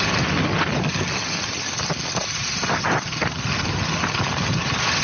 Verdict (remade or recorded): recorded